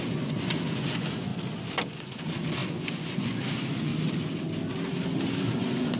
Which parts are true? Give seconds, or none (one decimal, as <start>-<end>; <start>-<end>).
1.3-1.8; 3.9-5.4